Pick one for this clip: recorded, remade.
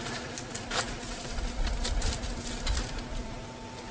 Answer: recorded